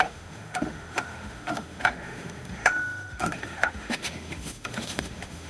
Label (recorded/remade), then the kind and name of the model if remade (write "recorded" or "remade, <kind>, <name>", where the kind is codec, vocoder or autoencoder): remade, autoencoder, DAC-VAE